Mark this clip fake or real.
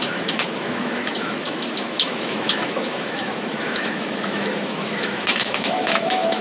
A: fake